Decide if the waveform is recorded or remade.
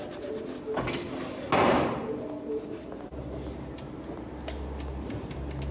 recorded